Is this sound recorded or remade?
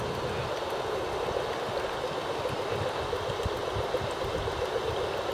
recorded